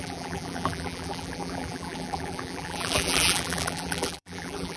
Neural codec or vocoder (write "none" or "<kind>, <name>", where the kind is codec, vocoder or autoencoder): vocoder, BigVGAN v2